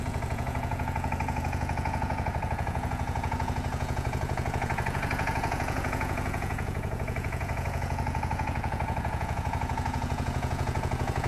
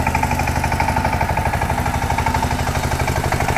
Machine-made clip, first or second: first